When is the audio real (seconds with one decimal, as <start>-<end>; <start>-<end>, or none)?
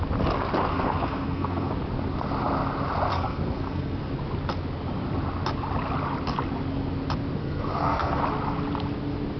0.0-0.7; 1.7-3.1; 4.1-7.4; 8.2-9.4